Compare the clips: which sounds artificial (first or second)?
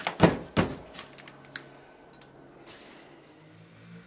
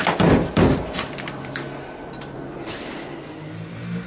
second